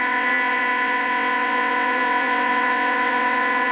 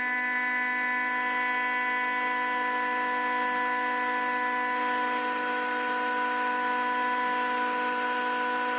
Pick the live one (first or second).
second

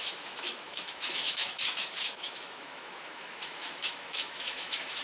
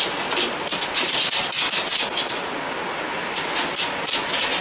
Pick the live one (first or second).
second